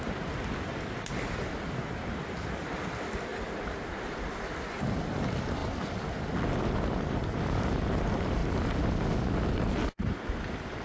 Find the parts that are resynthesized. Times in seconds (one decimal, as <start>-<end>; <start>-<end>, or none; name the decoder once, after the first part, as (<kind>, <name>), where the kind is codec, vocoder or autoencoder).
none